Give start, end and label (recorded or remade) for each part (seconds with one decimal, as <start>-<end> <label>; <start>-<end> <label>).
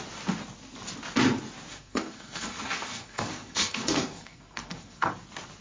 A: 0.0-1.7 recorded; 1.7-5.1 remade; 5.1-5.6 recorded